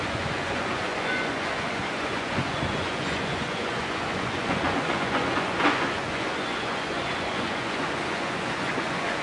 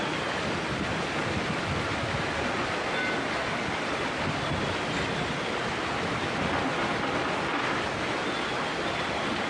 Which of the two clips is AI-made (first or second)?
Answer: first